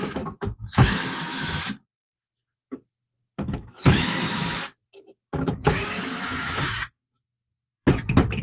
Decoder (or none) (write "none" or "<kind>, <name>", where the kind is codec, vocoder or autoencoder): autoencoder, DAC-VAE